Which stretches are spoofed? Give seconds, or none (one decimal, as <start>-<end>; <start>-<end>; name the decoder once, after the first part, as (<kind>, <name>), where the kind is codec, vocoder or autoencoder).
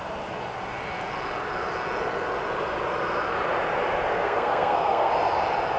4.1-5.1 (codec, SNAC)